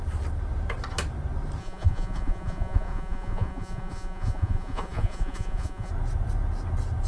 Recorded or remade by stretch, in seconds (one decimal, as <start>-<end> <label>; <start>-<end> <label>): 0.0-1.6 recorded; 1.6-5.9 remade; 5.9-7.1 recorded